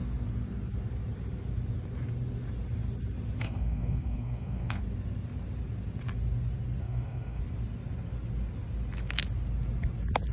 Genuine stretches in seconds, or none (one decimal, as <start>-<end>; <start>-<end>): 0.0-3.4; 4.8-6.8; 7.4-10.3